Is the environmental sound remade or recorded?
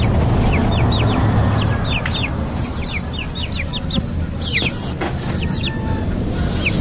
recorded